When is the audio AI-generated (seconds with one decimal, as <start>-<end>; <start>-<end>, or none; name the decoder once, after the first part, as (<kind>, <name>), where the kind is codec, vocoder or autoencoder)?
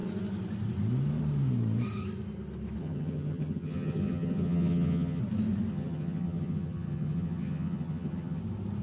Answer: 2.8-5.2 (vocoder, HiFi-GAN); 5.7-8.4